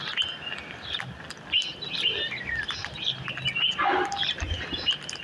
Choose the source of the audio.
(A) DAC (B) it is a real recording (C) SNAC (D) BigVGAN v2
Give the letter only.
B